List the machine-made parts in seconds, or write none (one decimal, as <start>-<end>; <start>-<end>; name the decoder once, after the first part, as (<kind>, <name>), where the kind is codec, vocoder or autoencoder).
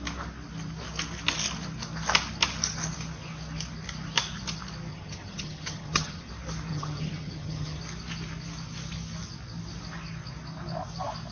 4.9-6.3 (vocoder, HiFi-GAN); 6.7-7.8